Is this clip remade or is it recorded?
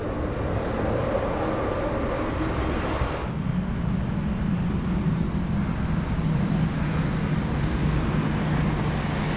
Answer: recorded